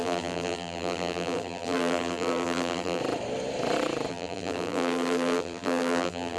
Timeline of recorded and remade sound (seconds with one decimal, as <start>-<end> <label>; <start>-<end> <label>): 0.0-3.0 remade; 3.0-4.1 recorded; 4.1-6.4 remade